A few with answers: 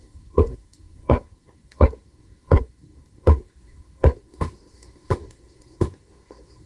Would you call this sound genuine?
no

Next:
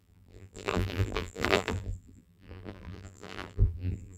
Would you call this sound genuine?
no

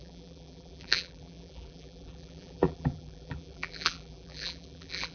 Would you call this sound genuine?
no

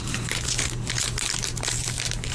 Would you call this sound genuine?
no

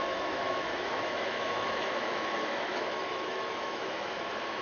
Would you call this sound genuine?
no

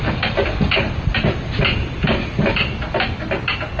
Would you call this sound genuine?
yes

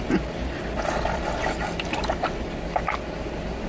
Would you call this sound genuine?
yes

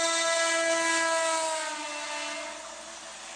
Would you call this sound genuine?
yes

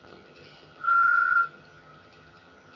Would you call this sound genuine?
no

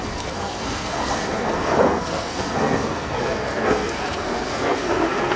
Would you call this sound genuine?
no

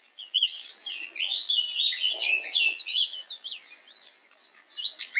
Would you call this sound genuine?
no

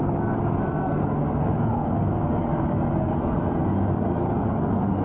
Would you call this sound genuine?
yes